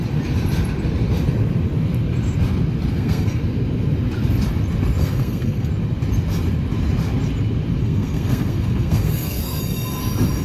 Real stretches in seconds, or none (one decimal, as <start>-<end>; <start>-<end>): 0.0-2.9; 3.4-5.0; 5.7-7.8; 9.6-10.4